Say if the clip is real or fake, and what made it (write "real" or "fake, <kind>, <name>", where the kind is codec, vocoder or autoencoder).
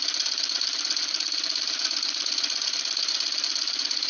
fake, vocoder, BigVGAN v2